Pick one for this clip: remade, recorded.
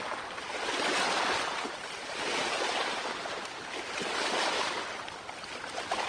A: recorded